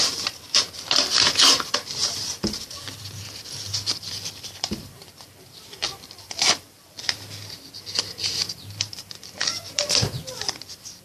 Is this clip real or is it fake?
fake